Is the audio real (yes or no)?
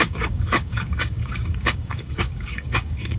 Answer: no